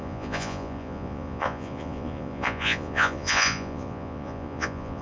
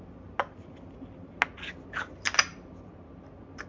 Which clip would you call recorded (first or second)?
second